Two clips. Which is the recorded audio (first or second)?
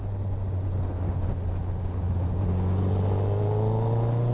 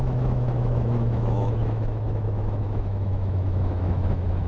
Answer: first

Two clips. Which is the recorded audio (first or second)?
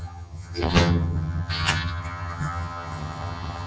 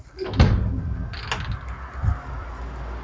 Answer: second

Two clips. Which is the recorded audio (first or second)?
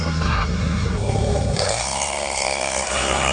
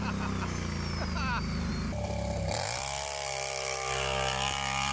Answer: second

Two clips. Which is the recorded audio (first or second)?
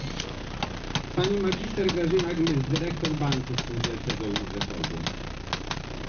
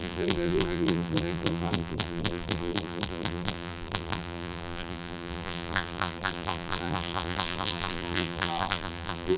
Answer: first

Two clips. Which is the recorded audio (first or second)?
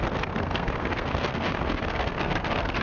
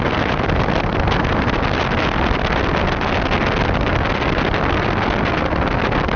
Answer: second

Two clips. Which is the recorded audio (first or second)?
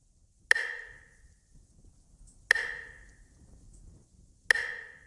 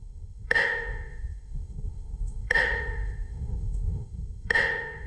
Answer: first